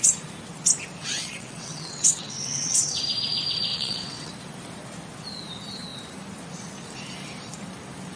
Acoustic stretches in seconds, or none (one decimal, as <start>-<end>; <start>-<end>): 0.0-1.0; 3.0-3.7; 4.3-8.2